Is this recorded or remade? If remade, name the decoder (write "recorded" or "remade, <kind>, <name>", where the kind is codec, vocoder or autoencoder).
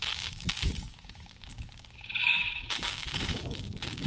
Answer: remade, codec, DAC